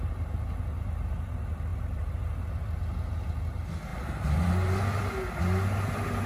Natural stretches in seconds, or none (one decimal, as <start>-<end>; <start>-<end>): 0.0-1.7; 2.8-3.9; 4.5-6.3